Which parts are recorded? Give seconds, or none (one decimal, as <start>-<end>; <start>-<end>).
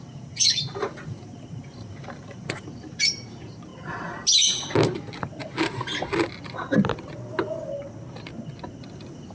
3.7-8.8